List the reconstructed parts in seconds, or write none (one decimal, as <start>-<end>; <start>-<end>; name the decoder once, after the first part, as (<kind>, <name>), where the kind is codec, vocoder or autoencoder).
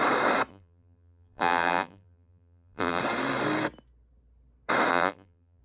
0.5-3.0 (vocoder, BigVGAN v2); 4.9-5.6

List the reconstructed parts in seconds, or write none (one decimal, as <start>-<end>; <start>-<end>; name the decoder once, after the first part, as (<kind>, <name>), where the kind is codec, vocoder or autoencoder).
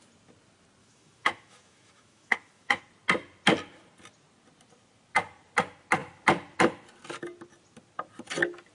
0.8-2.8 (autoencoder, DAC-VAE)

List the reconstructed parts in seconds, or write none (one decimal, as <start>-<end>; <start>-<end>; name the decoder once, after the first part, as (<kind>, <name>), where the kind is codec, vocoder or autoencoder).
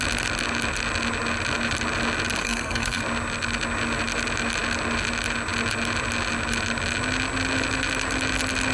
2.4-3.0 (codec, SNAC)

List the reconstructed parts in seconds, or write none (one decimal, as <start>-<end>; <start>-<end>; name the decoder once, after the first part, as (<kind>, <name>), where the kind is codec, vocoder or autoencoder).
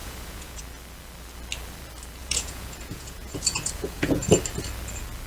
0.0-0.6 (vocoder, Vocos); 2.2-4.3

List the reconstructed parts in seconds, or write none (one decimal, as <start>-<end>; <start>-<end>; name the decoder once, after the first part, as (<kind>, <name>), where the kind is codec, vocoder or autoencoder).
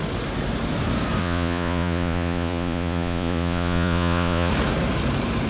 1.2-4.5 (vocoder, Vocos)